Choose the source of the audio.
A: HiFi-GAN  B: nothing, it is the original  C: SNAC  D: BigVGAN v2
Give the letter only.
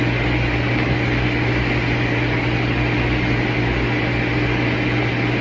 B